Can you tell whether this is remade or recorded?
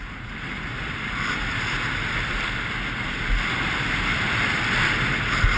recorded